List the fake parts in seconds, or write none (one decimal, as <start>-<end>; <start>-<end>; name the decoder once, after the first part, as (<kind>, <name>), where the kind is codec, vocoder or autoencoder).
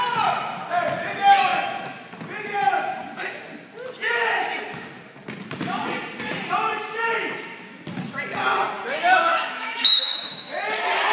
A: 9.3-10.6 (autoencoder, DAC-VAE)